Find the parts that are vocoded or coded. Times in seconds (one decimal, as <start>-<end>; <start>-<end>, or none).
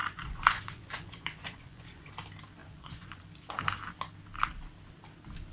0.0-2.1; 2.6-3.2